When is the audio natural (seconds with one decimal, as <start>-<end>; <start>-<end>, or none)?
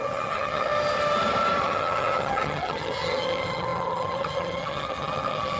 0.7-1.6